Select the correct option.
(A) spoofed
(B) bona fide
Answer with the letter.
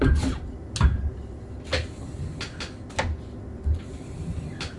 B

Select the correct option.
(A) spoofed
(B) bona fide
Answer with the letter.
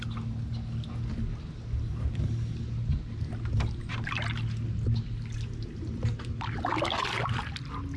B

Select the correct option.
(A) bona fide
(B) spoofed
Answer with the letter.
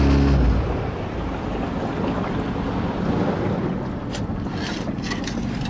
A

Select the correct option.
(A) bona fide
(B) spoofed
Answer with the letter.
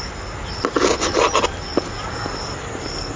A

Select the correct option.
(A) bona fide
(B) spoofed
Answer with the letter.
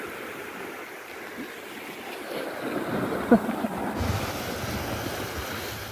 A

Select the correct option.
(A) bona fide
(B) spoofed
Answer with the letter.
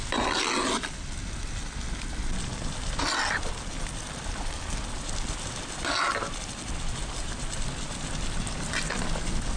A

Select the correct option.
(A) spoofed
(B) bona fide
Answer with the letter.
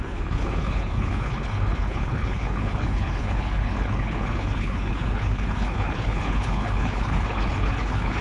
A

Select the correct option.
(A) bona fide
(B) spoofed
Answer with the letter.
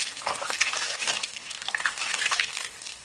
B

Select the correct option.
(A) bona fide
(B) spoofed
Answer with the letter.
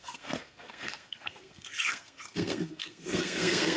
B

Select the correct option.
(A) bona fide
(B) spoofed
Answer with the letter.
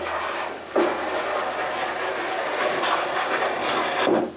A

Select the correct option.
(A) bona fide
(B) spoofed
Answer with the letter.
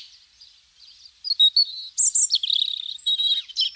A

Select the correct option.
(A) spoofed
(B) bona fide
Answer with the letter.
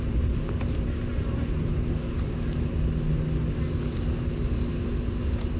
B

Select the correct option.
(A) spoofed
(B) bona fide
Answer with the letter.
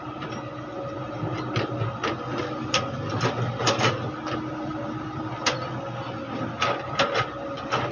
B